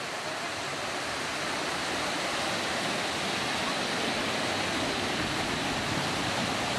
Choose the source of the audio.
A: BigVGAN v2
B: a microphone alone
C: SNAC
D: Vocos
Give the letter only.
B